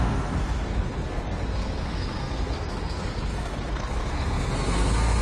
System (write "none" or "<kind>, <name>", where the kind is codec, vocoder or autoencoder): codec, SNAC